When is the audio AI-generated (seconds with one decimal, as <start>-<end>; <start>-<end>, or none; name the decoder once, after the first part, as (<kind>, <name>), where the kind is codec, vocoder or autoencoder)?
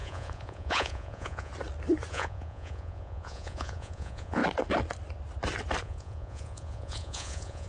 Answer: 0.0-1.5 (vocoder, Vocos); 2.1-4.4; 5.8-7.7